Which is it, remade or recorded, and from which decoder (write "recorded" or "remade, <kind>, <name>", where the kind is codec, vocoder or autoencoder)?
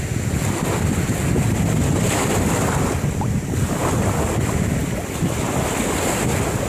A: recorded